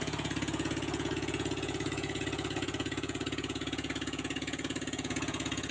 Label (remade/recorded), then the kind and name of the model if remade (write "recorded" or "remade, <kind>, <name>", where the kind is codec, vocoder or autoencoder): remade, vocoder, Vocos